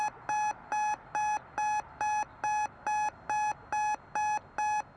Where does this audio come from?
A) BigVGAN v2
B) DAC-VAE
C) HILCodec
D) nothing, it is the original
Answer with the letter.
D